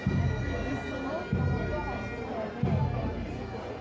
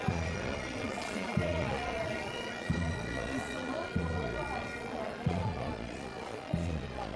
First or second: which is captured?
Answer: first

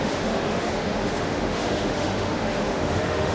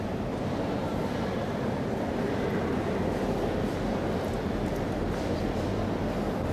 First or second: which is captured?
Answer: second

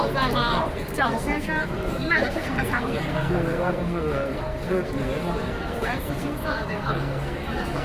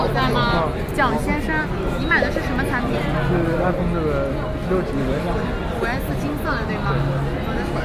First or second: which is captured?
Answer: second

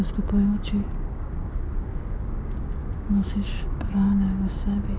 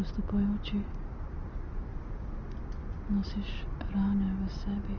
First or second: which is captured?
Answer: second